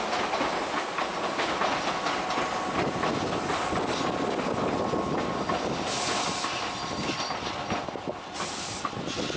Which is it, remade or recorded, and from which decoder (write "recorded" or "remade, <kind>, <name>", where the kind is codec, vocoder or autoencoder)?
recorded